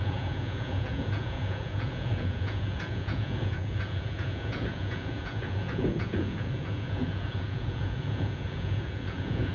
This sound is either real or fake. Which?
fake